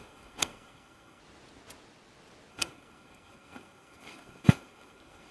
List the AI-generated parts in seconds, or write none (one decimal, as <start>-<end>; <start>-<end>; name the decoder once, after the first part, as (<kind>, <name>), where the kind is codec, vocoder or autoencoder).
0.0-1.2 (codec, SNAC); 2.5-5.3

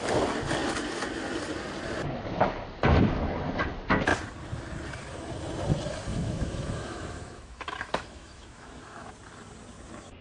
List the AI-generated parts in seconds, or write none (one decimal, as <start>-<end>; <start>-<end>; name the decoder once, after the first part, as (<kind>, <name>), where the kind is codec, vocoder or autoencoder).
6.1-9.1 (autoencoder, DAC-VAE)

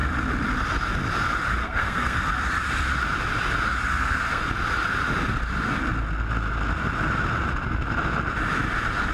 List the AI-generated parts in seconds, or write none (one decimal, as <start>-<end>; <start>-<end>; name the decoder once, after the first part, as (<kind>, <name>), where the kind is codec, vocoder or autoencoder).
1.6-2.3 (codec, SNAC); 3.9-4.5

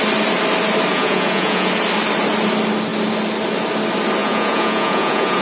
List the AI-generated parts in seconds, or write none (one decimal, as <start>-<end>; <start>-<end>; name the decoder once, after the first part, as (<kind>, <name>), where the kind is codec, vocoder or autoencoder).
0.9-1.7 (vocoder, Vocos); 4.2-5.4

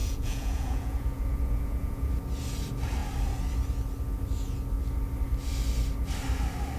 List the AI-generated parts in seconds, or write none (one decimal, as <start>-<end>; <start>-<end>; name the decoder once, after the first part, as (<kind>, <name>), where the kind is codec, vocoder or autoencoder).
0.0-2.1 (vocoder, Vocos)

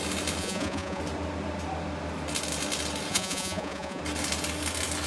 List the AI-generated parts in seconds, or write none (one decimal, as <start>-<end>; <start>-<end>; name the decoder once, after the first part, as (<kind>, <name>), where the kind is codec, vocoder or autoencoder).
0.4-1.0 (vocoder, Vocos); 3.1-4.0

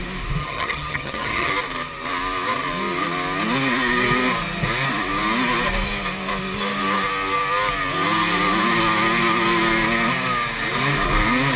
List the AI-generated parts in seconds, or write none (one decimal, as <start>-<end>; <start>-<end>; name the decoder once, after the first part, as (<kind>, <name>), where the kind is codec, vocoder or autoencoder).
0.4-1.5 (vocoder, HiFi-GAN)